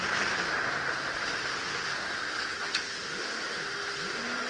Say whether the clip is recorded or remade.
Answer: recorded